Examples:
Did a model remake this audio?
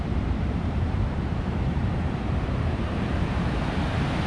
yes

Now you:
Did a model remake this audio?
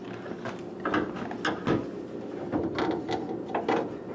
no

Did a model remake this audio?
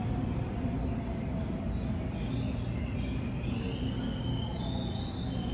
no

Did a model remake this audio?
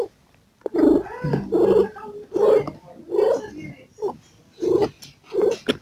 no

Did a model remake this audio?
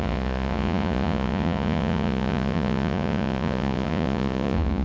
yes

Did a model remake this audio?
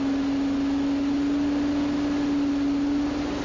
no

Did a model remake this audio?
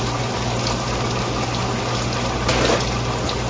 no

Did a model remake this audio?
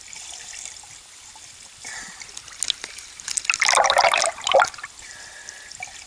no